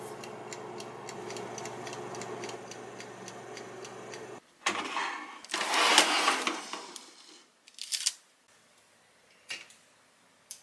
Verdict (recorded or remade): recorded